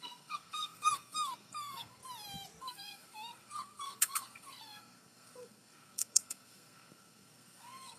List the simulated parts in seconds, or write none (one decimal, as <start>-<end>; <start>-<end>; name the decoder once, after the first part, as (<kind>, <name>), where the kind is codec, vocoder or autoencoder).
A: 0.0-2.0 (codec, SNAC); 2.6-8.0